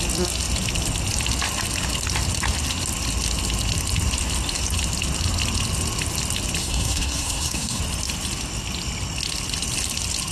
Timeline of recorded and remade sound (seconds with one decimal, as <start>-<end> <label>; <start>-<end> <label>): 0.0-6.6 recorded; 6.6-7.8 remade; 7.8-10.3 recorded